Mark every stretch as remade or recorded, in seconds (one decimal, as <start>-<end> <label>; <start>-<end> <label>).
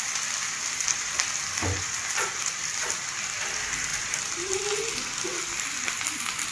0.0-6.5 remade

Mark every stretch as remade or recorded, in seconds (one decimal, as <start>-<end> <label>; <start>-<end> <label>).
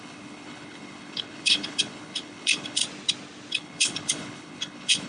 0.0-2.8 remade; 2.8-3.5 recorded; 3.5-5.1 remade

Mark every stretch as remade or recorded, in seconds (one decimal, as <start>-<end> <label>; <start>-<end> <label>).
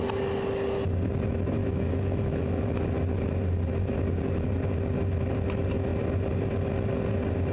0.0-1.6 recorded; 1.6-2.8 remade; 2.8-7.5 recorded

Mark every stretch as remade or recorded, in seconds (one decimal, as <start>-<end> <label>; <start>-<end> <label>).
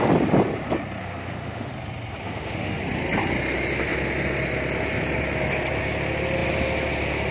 0.0-1.0 recorded; 1.0-1.7 remade; 1.7-2.2 recorded; 2.2-2.8 remade; 2.8-7.3 recorded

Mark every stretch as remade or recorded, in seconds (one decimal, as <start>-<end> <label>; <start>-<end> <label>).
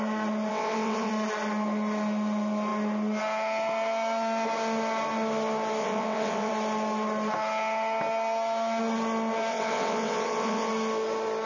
0.0-0.5 recorded; 0.5-1.1 remade; 1.1-5.8 recorded; 5.8-6.5 remade; 6.5-9.5 recorded; 9.5-10.7 remade; 10.7-11.5 recorded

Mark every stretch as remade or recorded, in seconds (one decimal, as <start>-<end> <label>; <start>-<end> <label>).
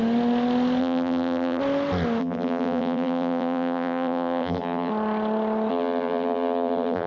0.0-0.8 recorded; 0.8-1.6 remade; 1.6-2.2 recorded; 2.2-4.9 remade; 4.9-5.7 recorded; 5.7-7.1 remade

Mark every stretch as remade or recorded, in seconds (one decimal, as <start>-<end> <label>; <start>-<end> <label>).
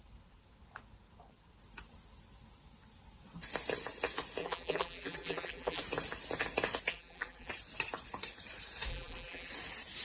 0.0-4.4 recorded; 4.4-5.8 remade; 5.8-6.9 recorded; 6.9-7.5 remade; 7.5-8.9 recorded; 8.9-9.5 remade; 9.5-10.0 recorded